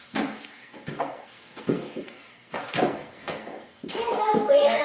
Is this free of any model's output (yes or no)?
no